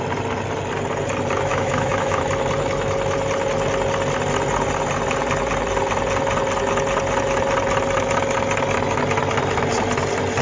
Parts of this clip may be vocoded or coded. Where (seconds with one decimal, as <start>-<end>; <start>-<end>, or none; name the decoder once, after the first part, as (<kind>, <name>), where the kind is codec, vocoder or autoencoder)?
1.5-2.2 (autoencoder, DAC-VAE)

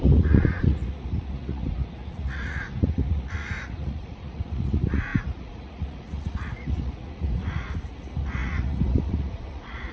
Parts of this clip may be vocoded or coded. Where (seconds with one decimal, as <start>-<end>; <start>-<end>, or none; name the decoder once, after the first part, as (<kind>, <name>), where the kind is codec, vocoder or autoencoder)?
0.0-9.9 (vocoder, Vocos)

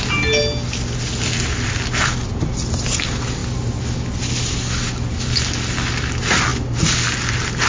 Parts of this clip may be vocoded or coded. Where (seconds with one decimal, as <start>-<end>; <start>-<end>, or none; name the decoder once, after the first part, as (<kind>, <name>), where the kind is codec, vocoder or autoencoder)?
none

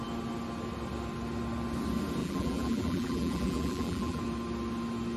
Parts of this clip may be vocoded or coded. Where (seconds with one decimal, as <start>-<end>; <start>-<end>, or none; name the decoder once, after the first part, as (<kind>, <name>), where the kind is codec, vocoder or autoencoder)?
2.2-4.2 (vocoder, BigVGAN v2)